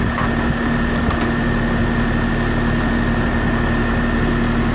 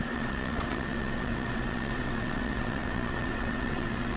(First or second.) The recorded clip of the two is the first